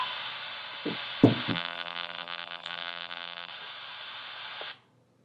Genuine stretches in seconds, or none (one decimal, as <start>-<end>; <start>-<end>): 0.0-1.5; 3.5-5.2